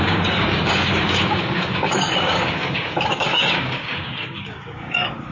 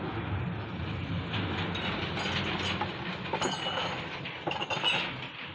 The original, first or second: second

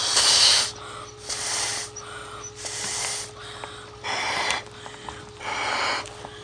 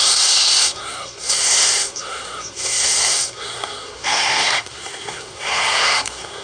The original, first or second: first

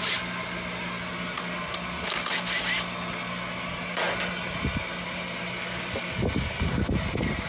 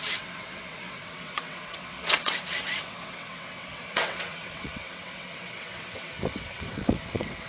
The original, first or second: first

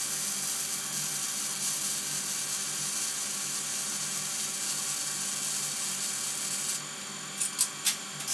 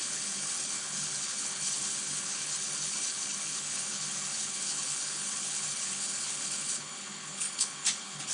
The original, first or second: first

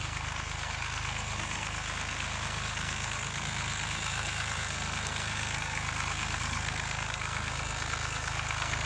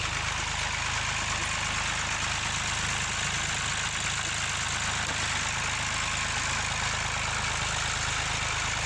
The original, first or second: second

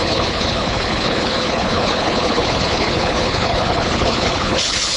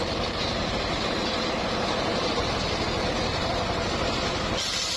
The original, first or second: second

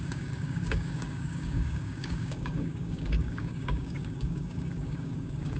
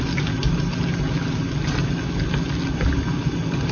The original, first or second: second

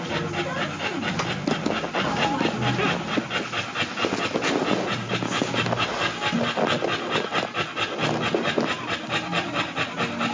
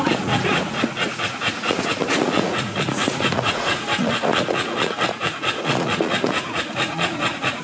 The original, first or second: first